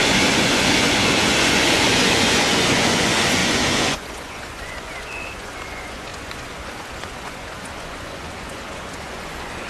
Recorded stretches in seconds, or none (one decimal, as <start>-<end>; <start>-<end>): none